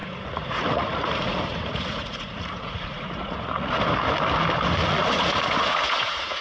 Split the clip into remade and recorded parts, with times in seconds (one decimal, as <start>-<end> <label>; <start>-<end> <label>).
0.0-3.8 remade; 3.8-4.8 recorded; 4.8-6.4 remade